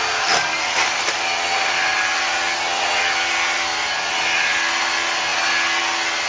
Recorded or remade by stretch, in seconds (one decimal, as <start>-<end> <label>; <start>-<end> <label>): 0.0-6.3 recorded